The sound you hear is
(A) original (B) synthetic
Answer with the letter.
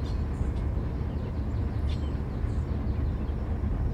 A